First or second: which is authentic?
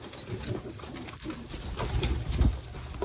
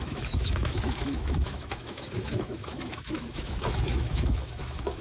first